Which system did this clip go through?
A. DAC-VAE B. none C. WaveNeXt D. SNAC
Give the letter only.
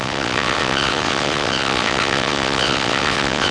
C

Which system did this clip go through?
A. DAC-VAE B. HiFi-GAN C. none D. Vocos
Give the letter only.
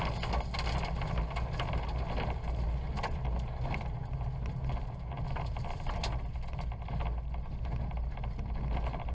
C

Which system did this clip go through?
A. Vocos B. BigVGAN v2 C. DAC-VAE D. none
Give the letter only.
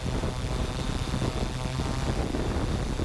D